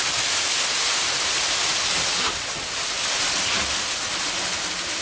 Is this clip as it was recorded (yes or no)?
yes